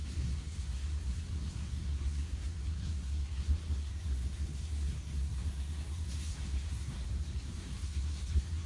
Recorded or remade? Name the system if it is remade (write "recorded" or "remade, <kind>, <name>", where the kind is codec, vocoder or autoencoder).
remade, codec, SNAC